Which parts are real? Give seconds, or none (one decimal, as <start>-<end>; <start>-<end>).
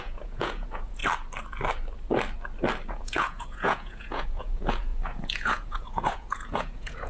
1.0-2.9